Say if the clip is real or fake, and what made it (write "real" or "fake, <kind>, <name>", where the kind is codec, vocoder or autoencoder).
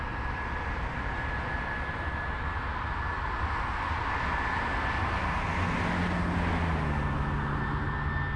real